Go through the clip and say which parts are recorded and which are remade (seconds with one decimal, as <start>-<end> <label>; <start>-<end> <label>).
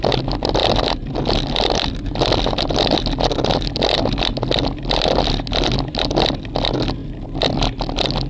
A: 0.0-8.3 recorded